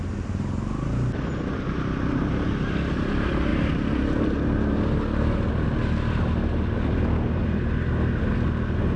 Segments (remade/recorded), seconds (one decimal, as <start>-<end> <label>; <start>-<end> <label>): 0.0-9.0 recorded